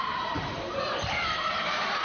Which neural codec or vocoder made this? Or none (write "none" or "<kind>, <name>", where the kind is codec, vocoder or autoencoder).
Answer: vocoder, BigVGAN v2